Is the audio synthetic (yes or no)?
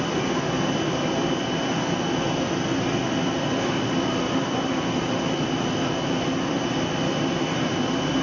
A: yes